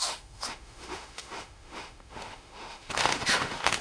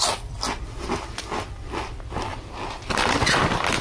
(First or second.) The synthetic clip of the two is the first